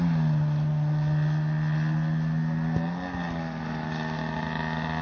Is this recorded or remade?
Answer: recorded